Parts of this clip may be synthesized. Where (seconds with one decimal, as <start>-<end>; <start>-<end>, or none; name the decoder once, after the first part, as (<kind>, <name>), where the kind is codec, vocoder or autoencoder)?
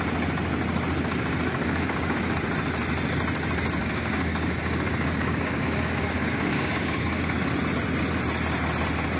1.5-2.2 (codec, DAC); 3.8-7.5